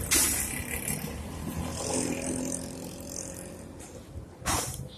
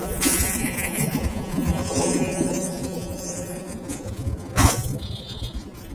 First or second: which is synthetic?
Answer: second